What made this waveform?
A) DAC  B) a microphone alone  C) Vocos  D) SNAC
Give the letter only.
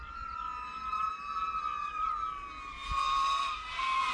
B